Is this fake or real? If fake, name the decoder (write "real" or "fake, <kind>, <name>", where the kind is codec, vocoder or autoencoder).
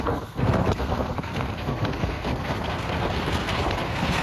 fake, codec, SNAC